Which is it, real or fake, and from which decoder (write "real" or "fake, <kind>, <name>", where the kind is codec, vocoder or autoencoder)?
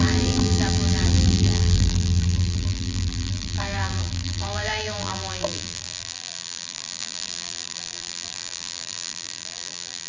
fake, vocoder, BigVGAN v2